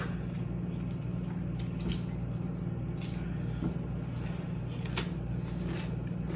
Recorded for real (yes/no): yes